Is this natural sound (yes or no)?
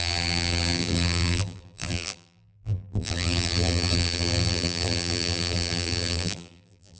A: no